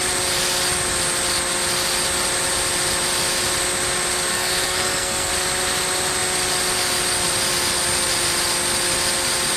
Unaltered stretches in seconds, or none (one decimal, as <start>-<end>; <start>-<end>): 0.0-4.3; 5.3-9.6